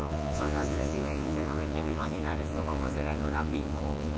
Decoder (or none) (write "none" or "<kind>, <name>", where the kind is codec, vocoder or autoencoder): vocoder, Vocos